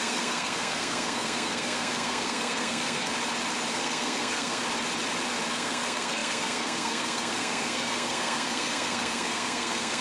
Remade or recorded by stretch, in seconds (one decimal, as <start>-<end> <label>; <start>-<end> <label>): 0.0-3.1 remade; 3.1-3.7 recorded; 3.7-4.6 remade; 4.6-5.5 recorded; 5.5-10.0 remade